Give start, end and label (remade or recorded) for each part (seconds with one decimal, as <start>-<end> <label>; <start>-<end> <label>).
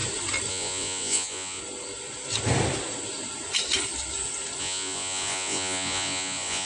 0.0-0.5 recorded; 0.5-1.6 remade; 1.6-4.6 recorded; 4.6-6.7 remade